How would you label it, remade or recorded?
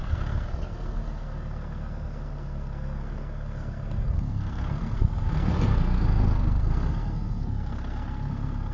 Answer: remade